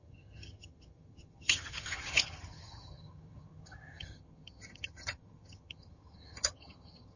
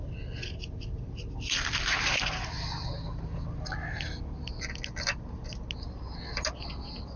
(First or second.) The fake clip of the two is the first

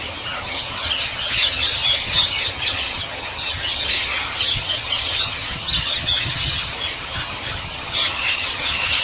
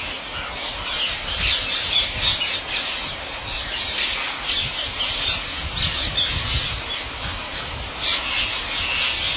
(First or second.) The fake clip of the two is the first